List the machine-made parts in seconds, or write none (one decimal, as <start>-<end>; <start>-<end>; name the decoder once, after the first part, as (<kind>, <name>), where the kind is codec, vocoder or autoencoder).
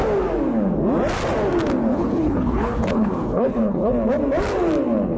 1.9-3.9 (codec, HILCodec)